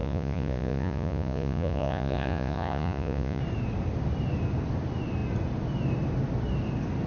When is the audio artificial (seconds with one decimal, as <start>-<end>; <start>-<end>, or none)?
0.0-3.4